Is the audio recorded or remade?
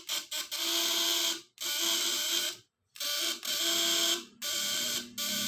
recorded